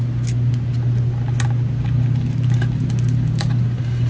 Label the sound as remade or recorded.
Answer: recorded